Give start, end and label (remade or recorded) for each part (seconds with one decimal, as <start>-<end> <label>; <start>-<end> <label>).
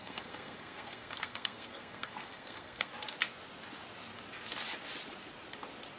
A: 0.0-2.9 remade; 2.9-6.0 recorded